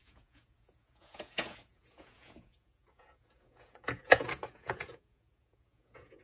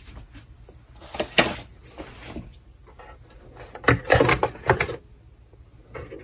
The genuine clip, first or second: second